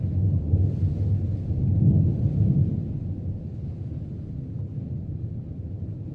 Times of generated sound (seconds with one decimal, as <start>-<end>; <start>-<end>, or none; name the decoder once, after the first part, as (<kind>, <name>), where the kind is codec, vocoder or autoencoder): 1.7-2.4 (vocoder, BigVGAN v2)